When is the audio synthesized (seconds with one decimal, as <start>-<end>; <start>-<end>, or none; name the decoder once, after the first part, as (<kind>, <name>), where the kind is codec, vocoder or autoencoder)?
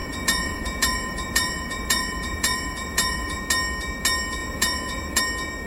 0.0-3.4 (vocoder, Vocos); 4.4-5.2